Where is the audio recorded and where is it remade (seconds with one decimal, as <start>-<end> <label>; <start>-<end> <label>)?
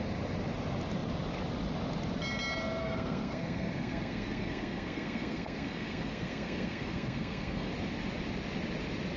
0.0-2.8 recorded; 2.8-7.7 remade; 7.7-9.2 recorded